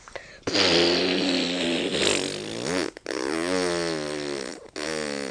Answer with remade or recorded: recorded